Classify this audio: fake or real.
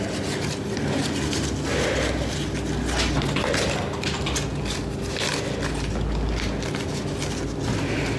real